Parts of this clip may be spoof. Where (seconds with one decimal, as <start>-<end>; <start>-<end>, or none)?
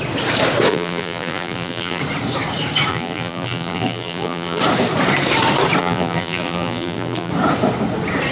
0.7-2.0; 2.9-4.6; 5.8-7.3